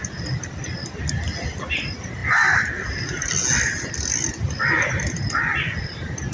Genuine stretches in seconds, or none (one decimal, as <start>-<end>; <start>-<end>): 0.0-6.3